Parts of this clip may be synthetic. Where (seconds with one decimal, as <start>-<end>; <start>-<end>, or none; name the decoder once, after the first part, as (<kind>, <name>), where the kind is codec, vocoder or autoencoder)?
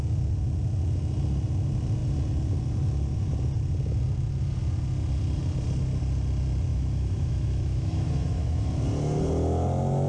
6.7-8.7 (autoencoder, DAC-VAE)